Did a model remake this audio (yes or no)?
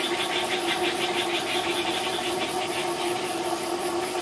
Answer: yes